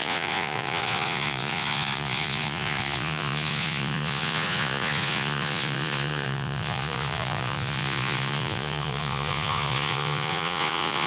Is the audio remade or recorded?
remade